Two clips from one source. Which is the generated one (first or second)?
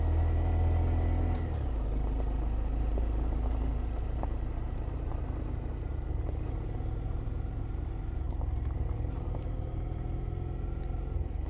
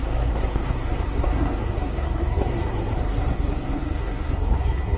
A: second